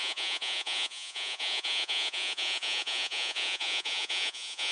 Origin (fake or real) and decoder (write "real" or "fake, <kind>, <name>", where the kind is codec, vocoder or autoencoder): fake, vocoder, Vocos